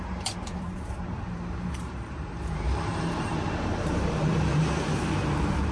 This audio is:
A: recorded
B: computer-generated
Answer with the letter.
B